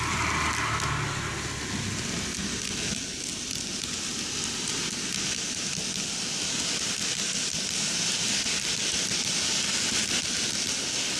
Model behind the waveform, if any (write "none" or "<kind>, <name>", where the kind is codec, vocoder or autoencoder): none